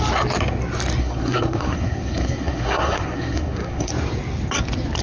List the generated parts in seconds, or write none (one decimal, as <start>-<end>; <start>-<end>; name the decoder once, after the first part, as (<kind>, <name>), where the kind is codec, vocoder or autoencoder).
1.0-3.9 (codec, SNAC)